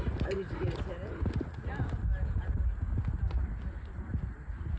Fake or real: real